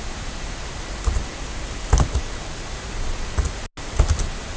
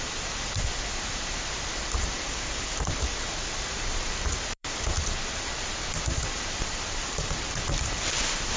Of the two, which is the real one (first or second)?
first